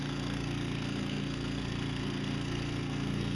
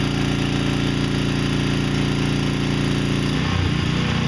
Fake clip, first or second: first